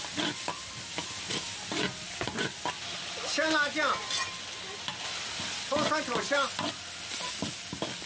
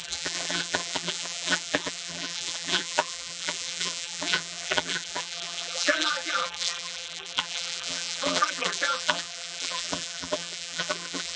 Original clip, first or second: first